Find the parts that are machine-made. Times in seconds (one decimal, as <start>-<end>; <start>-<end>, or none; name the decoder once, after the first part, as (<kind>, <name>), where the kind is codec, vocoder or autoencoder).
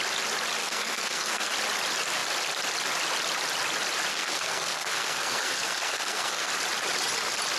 0.6-1.5 (codec, SNAC); 4.1-6.5